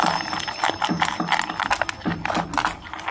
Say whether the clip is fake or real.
real